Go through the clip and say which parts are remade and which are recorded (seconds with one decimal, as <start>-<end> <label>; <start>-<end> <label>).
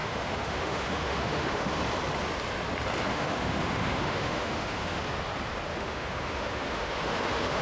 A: 0.0-1.8 remade; 1.8-3.1 recorded; 3.1-5.0 remade; 5.0-5.7 recorded; 5.7-7.6 remade